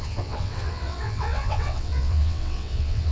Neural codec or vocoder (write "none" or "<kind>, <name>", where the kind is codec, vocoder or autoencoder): vocoder, WaveNeXt